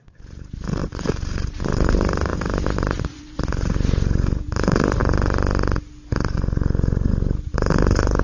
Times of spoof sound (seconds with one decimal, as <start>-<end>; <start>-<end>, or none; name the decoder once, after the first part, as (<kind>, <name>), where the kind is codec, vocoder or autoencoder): 0.0-0.8 (vocoder, BigVGAN v2); 1.6-5.0; 7.1-8.2